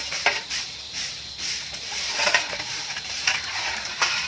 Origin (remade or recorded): remade